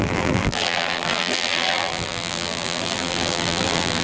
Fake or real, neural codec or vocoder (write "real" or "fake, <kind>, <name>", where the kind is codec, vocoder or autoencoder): fake, vocoder, BigVGAN v2